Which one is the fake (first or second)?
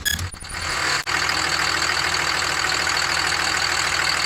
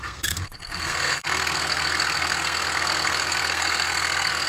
second